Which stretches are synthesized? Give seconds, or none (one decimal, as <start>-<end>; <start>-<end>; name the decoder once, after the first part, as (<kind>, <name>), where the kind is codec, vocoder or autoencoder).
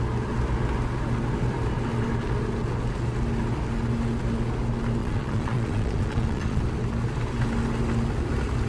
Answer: 5.0-6.6 (vocoder, Vocos)